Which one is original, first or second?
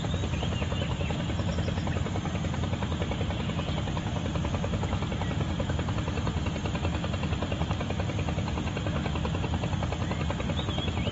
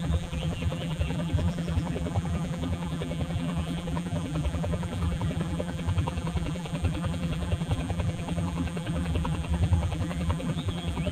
first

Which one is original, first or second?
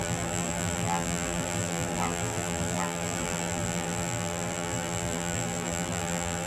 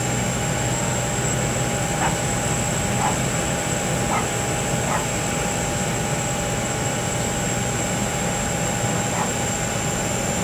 second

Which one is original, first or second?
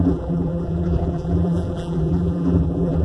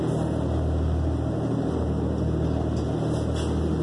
second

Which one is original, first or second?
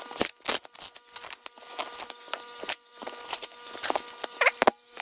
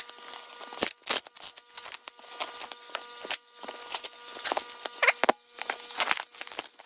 second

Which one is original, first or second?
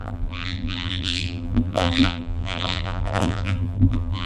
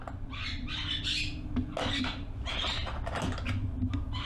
second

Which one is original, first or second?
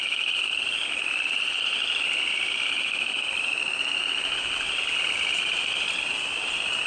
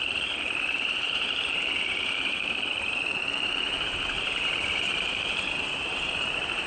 first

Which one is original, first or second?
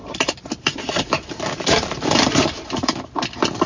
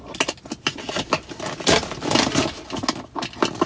second